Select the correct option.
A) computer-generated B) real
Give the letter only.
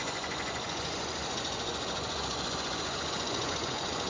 A